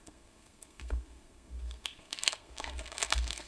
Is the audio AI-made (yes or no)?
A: yes